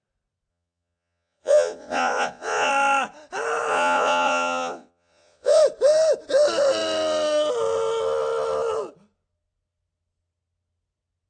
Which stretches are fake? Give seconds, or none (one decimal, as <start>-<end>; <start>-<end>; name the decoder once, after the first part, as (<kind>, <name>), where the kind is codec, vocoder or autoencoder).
0.5-2.7 (vocoder, Vocos); 3.7-5.6